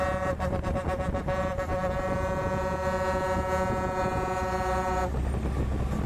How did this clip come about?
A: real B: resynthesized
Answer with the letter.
A